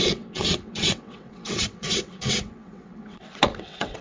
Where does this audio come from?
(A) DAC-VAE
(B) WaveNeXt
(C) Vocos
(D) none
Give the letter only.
B